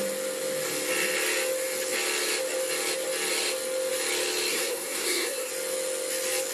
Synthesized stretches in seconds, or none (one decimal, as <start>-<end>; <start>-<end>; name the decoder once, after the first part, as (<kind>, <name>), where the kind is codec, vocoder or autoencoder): 4.5-5.5 (codec, SNAC)